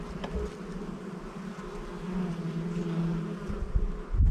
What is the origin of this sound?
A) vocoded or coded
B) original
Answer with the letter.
B